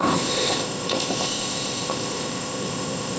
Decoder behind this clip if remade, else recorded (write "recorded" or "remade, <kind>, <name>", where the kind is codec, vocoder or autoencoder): remade, codec, ZipCodec